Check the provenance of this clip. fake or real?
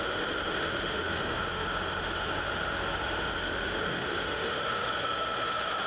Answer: fake